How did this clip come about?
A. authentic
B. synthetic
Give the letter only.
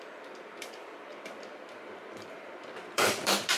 B